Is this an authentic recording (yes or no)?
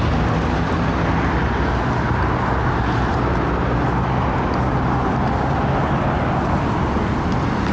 yes